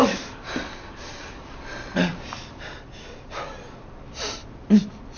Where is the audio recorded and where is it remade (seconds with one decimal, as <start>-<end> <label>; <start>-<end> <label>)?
0.0-5.2 recorded